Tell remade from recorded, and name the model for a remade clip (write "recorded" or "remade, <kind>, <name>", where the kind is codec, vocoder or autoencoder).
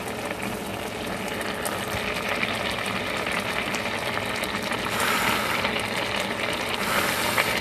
recorded